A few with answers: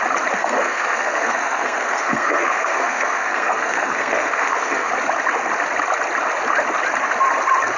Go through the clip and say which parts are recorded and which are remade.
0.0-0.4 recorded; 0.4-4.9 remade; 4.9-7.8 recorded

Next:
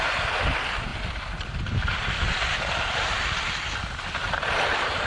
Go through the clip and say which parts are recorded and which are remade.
0.0-4.2 recorded; 4.2-5.1 remade